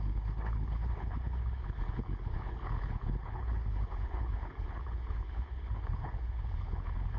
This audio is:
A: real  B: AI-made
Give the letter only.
B